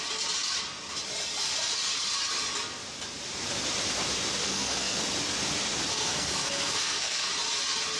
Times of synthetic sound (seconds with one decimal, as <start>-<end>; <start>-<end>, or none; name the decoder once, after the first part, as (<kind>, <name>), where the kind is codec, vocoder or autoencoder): 4.4-5.0 (codec, SNAC); 5.9-7.3